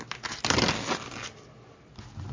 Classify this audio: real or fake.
real